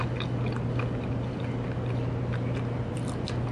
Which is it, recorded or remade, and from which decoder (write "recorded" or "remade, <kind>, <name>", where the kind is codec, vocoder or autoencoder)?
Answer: recorded